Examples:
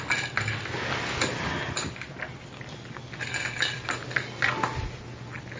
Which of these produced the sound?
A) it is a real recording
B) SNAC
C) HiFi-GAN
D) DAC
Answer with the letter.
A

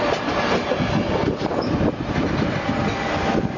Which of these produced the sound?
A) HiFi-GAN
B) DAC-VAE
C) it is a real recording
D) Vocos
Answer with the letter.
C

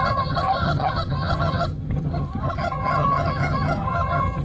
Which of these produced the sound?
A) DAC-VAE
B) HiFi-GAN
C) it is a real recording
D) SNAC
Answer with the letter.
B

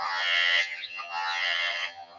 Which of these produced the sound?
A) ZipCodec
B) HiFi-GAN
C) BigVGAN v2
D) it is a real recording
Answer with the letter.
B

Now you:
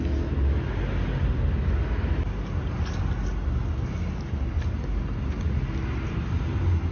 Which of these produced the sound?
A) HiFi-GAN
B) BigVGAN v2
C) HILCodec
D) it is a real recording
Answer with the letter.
D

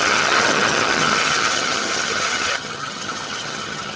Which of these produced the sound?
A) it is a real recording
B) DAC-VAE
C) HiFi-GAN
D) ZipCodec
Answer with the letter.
C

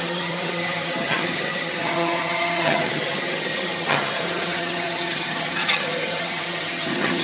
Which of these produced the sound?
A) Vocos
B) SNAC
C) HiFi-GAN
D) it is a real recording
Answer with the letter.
C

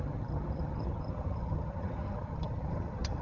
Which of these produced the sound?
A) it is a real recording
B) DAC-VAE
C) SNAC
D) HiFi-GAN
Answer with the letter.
D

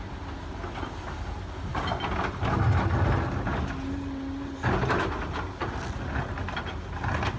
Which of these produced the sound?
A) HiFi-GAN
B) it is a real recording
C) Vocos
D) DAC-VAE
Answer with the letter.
B